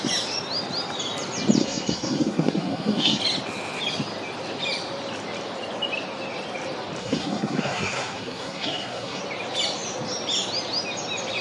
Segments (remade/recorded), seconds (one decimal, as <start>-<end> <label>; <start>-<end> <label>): 0.0-1.6 recorded; 1.6-3.2 remade; 3.2-7.0 recorded; 7.0-9.2 remade; 9.2-11.4 recorded